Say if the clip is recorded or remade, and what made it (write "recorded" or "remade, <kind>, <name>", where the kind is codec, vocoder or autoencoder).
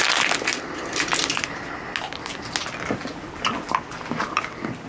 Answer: recorded